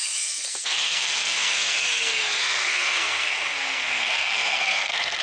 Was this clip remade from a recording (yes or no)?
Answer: yes